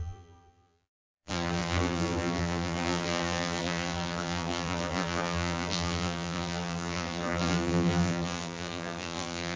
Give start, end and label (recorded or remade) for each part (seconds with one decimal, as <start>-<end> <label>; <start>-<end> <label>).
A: 0.0-9.6 remade